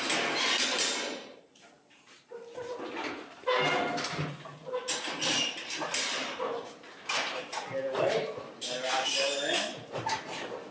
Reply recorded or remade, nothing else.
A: recorded